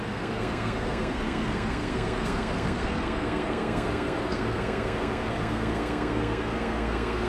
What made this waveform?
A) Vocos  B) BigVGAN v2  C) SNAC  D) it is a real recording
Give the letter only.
C